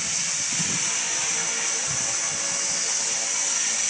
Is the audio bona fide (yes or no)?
yes